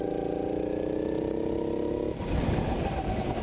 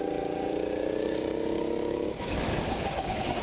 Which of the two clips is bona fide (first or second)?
first